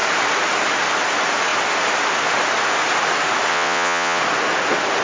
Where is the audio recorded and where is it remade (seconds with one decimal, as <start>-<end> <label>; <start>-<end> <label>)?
0.0-3.5 recorded; 3.5-4.2 remade; 4.2-5.0 recorded